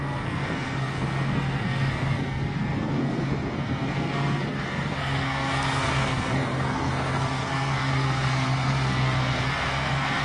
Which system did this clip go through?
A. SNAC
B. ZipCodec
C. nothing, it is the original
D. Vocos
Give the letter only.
A